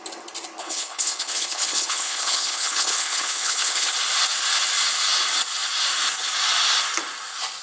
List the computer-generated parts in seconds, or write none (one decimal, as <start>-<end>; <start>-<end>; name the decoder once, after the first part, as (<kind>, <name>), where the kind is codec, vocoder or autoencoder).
0.6-3.9 (codec, HILCodec)